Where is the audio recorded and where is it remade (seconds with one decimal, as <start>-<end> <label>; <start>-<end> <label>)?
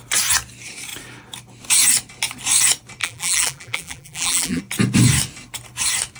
0.0-3.0 recorded; 3.0-4.6 remade; 4.6-6.2 recorded